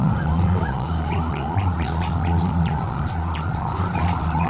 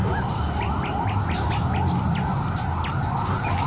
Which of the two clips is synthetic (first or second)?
first